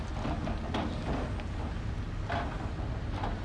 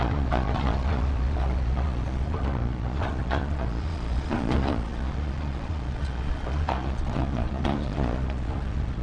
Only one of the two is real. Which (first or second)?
first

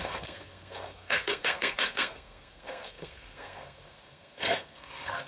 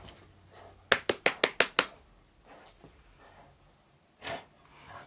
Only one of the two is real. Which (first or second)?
second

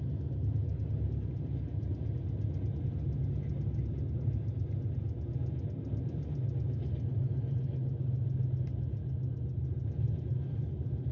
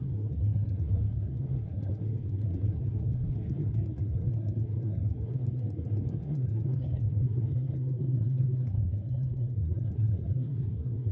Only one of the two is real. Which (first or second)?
first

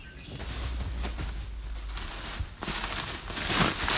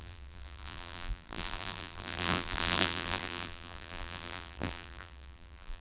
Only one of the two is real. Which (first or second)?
first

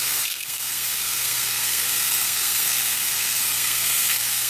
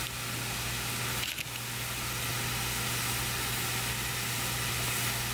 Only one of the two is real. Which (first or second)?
second